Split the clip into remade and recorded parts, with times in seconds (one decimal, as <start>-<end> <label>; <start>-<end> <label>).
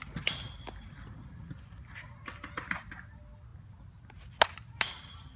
0.0-5.4 recorded